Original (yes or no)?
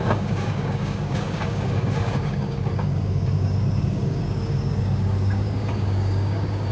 no